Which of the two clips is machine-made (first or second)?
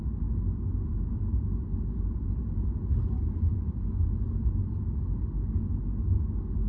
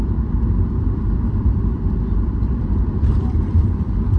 second